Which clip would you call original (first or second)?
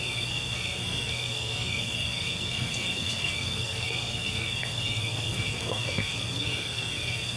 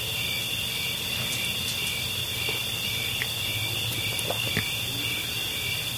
second